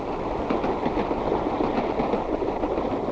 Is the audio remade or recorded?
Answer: recorded